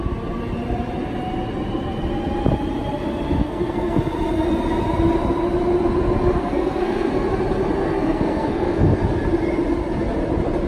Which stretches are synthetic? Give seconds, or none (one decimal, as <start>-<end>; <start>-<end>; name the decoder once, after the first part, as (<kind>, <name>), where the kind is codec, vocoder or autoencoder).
3.4-4.0 (codec, SNAC); 6.4-7.1; 7.8-9.0

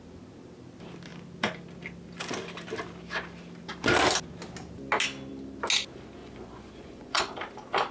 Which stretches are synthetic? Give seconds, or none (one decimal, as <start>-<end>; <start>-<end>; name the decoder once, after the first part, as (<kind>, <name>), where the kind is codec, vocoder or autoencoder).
6.2-7.2 (vocoder, Vocos)

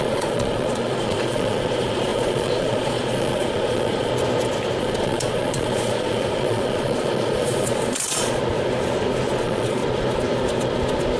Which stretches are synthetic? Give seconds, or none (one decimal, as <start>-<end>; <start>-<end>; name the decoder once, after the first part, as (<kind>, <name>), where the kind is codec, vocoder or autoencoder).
0.0-4.1 (vocoder, Vocos); 4.8-8.4; 9.4-9.8

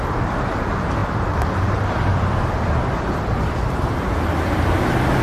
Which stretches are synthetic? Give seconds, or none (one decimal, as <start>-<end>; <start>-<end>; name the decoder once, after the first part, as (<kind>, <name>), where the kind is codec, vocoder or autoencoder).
1.0-4.1 (vocoder, BigVGAN v2)

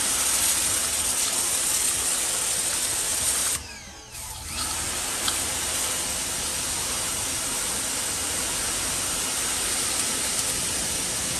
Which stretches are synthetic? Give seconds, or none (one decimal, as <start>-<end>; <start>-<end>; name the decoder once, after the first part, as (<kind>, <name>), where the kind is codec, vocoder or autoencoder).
none

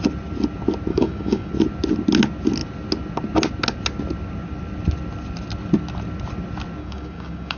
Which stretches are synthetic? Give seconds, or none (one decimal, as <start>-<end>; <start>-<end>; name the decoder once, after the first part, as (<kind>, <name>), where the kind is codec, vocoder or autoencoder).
0.9-1.5 (codec, DAC); 6.8-7.6

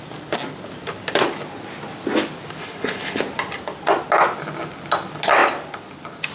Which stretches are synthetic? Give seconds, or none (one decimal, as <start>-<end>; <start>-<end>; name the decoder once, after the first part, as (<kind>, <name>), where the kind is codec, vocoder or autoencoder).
2.6-3.2 (codec, HILCodec)